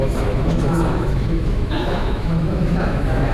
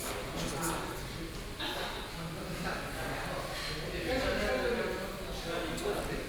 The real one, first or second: second